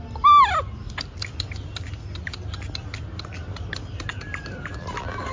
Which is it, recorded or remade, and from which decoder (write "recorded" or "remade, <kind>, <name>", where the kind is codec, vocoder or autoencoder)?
recorded